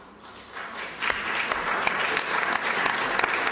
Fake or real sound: real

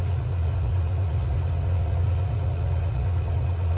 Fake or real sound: fake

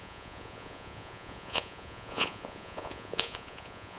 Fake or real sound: fake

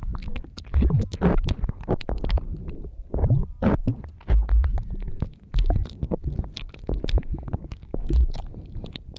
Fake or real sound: real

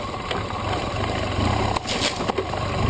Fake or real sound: real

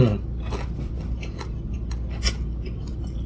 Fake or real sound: real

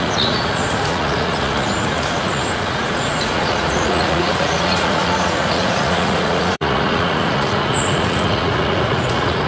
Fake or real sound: fake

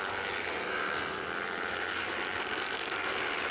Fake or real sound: real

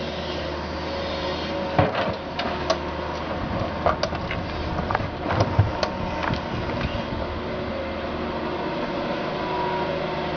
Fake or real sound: real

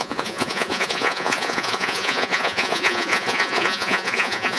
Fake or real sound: fake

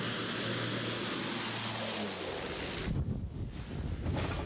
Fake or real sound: real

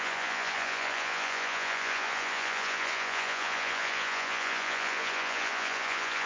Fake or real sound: fake